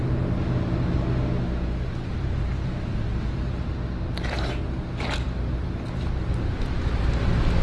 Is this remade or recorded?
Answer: recorded